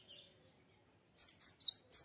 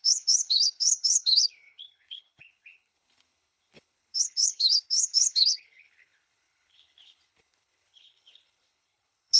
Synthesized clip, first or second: second